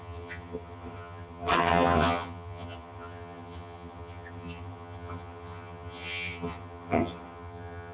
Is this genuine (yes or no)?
no